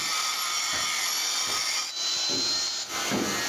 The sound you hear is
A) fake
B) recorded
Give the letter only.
B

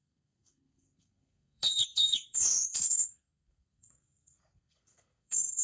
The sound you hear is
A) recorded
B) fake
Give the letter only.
B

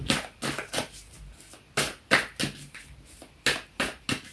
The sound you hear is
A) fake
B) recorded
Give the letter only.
B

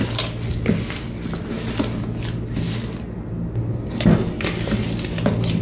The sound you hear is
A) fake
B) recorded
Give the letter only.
B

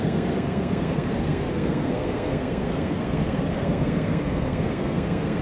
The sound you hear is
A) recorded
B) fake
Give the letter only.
B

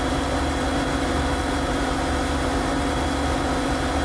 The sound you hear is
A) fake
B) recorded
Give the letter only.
B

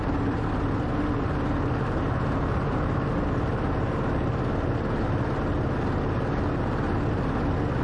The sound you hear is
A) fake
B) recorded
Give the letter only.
B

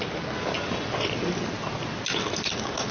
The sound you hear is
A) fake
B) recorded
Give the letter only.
B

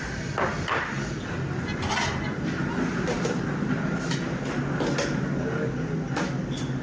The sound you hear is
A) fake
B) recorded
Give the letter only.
B